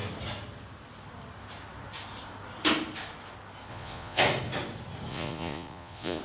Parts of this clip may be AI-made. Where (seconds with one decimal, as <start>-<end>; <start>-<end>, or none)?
3.7-4.2; 5.1-6.2